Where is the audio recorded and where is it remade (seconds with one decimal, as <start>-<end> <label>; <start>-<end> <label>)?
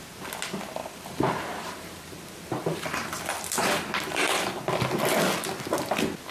0.0-0.8 recorded; 0.8-4.6 remade; 4.6-6.3 recorded